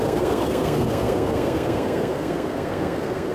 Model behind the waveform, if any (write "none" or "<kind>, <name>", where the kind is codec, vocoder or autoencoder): codec, SNAC